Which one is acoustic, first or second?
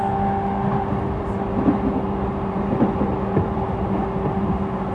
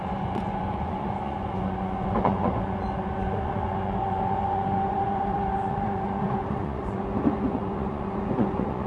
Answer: first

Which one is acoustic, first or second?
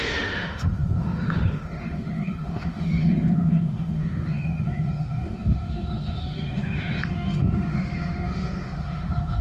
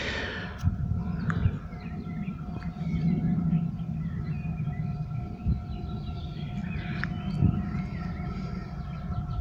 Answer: second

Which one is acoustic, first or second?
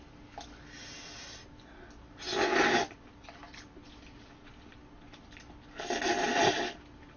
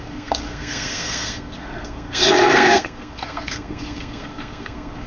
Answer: first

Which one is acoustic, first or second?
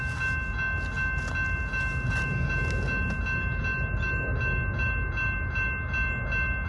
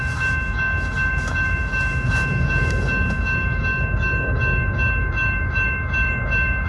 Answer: first